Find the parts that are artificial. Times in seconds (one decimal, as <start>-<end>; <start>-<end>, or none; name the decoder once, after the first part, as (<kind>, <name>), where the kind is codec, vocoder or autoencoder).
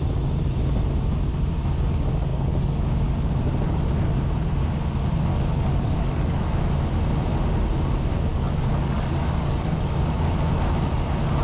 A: 2.3-2.8 (codec, DAC); 5.3-6.5; 8.3-10.3